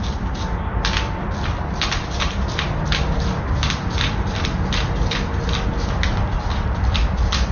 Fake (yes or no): no